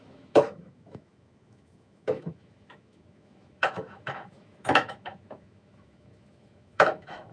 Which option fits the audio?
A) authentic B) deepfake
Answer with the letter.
B